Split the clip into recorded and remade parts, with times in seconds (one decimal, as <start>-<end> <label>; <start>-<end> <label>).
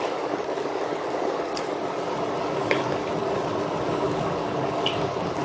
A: 0.0-1.5 remade; 1.5-2.4 recorded; 2.4-3.0 remade; 3.0-3.9 recorded; 3.9-5.4 remade